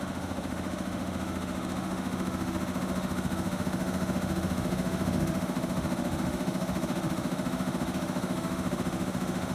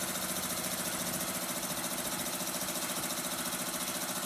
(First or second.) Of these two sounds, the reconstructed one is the first